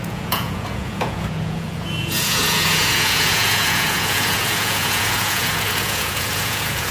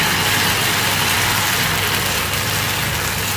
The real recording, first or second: second